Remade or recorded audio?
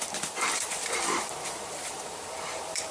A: remade